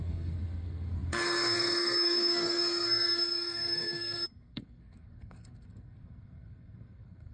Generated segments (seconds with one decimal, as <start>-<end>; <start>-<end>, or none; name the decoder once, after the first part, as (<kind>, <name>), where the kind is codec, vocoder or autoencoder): 0.0-7.3 (codec, SNAC)